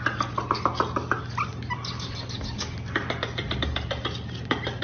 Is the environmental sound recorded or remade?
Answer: recorded